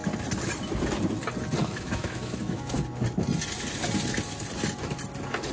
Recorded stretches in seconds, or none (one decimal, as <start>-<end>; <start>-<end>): 0.0-1.6; 2.8-5.5